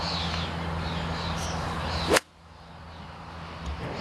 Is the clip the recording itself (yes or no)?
yes